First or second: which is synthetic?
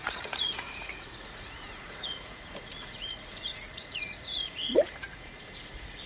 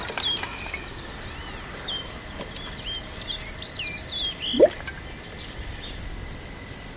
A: first